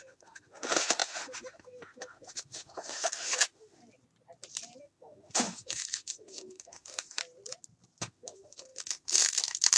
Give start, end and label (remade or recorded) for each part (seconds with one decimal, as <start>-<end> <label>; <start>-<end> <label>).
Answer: 0.0-3.8 remade; 3.8-4.8 recorded; 4.8-7.2 remade; 7.2-8.0 recorded; 8.0-9.8 remade

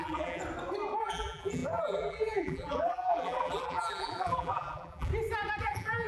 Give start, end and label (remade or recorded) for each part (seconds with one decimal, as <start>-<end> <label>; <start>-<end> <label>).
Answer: 0.0-0.4 remade; 0.4-1.0 recorded; 1.0-5.1 remade; 5.1-5.6 recorded; 5.6-6.1 remade

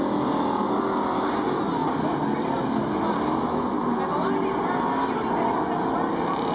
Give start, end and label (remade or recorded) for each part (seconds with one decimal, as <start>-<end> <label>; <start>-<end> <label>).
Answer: 0.0-6.5 recorded

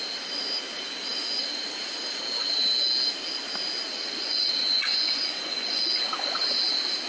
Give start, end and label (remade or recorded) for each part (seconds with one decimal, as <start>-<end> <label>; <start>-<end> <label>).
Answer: 0.0-3.9 recorded; 3.9-5.8 remade; 5.8-7.1 recorded

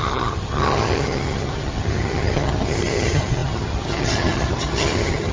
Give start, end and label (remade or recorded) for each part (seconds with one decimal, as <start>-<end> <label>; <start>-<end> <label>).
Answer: 0.0-5.3 remade

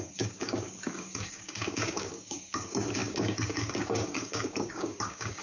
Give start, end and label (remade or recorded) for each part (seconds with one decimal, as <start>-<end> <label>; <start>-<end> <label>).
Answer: 0.0-5.4 remade

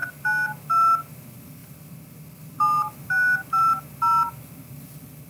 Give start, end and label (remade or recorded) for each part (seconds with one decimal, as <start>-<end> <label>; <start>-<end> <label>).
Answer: 0.0-5.3 recorded

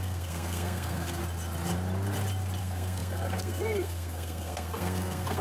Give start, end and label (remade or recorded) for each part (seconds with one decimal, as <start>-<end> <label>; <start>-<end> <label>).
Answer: 0.0-1.2 remade; 1.2-2.6 recorded; 2.6-5.4 remade